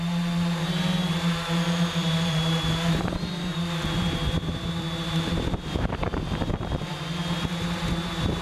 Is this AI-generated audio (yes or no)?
yes